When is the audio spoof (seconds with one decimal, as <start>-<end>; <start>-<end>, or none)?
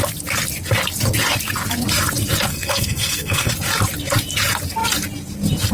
2.5-3.5